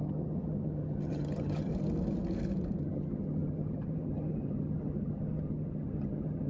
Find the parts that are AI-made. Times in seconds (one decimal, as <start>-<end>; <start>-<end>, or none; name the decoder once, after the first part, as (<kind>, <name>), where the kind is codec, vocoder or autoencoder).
0.0-1.7 (vocoder, HiFi-GAN); 2.8-6.5